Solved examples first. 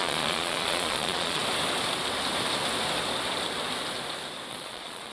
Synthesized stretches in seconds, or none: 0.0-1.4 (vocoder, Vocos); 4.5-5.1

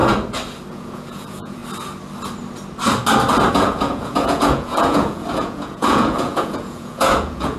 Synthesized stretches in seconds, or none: 0.7-1.6 (vocoder, Vocos); 3.5-7.6